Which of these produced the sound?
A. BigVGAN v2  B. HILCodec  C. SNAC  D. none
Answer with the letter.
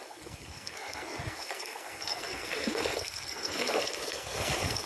C